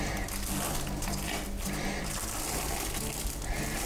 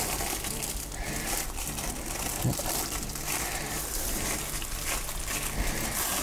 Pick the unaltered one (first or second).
first